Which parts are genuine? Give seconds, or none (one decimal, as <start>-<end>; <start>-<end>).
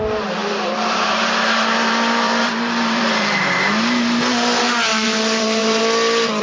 0.0-0.4; 4.2-4.9; 5.8-6.4